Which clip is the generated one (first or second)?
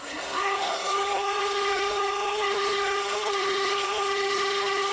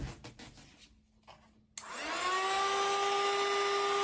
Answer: first